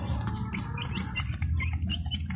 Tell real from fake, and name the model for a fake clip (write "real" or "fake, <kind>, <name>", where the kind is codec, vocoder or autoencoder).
real